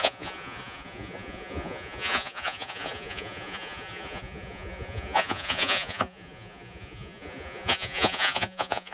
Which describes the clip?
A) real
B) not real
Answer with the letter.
B